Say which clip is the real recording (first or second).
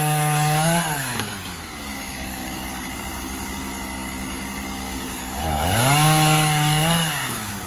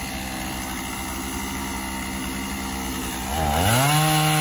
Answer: second